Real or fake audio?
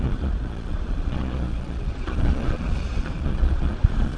fake